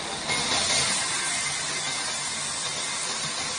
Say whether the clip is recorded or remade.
recorded